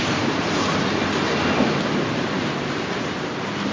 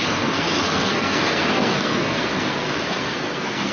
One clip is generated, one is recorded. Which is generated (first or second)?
second